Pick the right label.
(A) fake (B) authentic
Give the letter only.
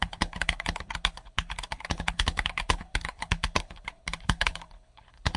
A